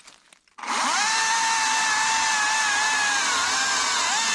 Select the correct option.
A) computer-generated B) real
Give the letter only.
B